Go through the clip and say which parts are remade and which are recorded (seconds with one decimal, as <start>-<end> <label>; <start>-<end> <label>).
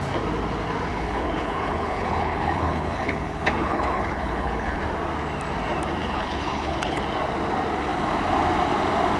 0.0-0.9 recorded; 0.9-4.8 remade; 4.8-6.0 recorded; 6.0-7.0 remade; 7.0-9.2 recorded